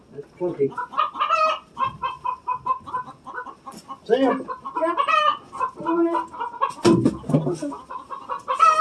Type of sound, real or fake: real